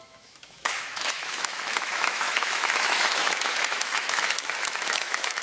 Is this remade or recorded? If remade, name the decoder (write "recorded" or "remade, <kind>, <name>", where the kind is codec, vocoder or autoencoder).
remade, autoencoder, DAC-VAE